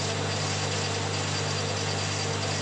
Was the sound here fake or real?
real